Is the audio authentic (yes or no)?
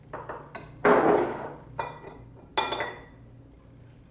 yes